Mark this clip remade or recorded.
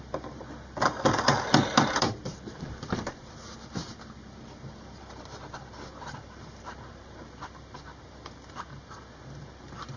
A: remade